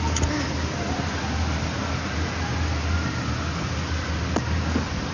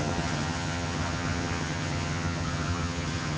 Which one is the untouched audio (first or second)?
first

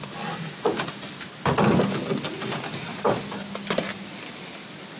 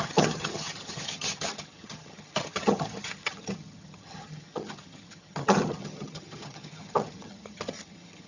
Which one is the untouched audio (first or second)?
first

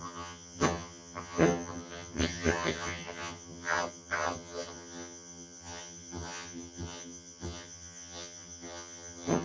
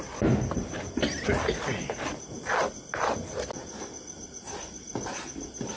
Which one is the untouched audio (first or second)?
second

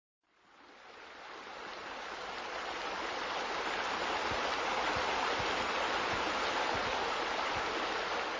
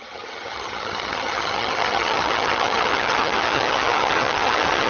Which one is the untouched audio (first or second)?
first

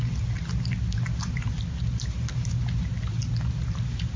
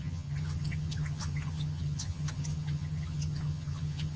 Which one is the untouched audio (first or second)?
first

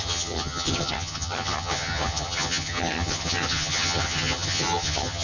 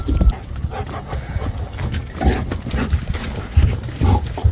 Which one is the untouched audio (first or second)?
second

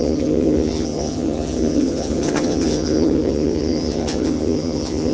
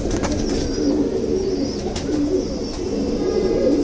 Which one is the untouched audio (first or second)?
second